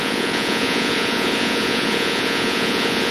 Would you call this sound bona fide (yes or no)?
no